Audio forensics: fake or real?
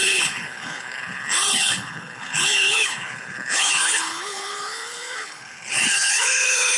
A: fake